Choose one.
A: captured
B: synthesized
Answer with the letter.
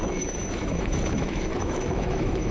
B